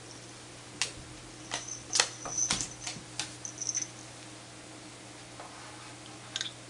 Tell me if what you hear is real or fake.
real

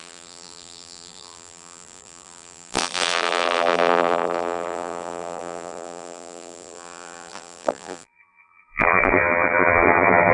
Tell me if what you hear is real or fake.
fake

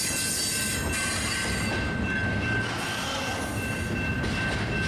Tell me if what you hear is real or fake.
real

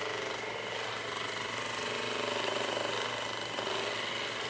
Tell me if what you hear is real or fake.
real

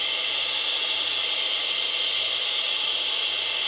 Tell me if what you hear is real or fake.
real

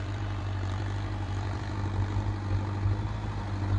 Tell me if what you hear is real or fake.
fake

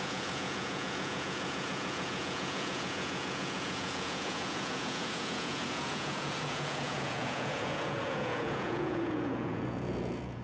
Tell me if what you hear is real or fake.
fake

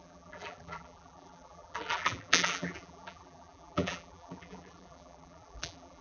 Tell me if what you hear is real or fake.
fake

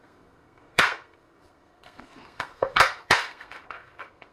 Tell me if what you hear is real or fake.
fake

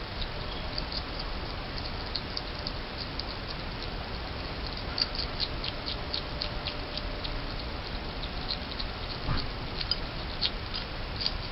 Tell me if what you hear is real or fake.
real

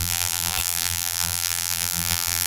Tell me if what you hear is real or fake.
fake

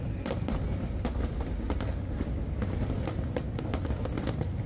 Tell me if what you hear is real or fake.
real